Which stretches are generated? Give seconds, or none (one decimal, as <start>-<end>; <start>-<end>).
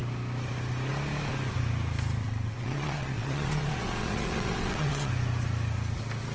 2.2-5.1